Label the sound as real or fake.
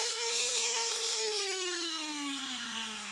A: fake